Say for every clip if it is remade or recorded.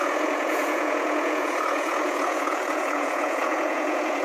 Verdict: remade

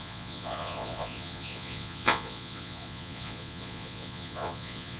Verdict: remade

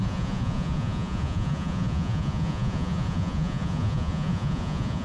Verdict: remade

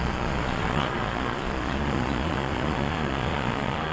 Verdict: remade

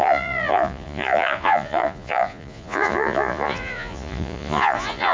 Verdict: remade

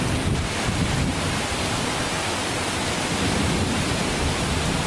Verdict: recorded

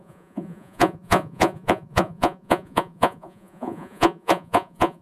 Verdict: remade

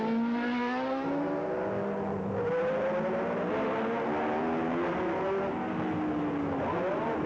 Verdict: recorded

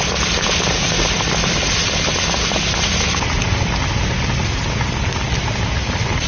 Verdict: recorded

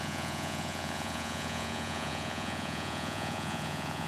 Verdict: remade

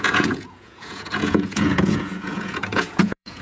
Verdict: remade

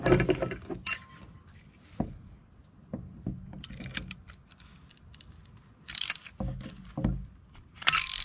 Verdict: recorded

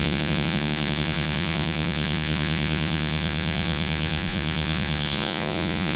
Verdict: remade